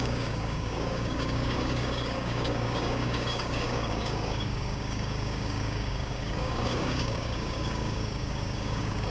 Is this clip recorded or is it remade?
remade